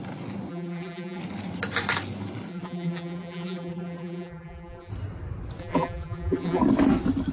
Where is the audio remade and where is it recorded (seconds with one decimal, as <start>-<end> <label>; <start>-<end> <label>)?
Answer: 0.0-0.5 recorded; 0.5-1.2 remade; 1.2-2.5 recorded; 2.5-4.9 remade; 4.9-5.6 recorded; 5.6-6.6 remade; 6.6-7.3 recorded